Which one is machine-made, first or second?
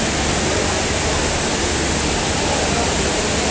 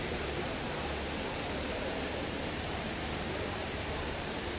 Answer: second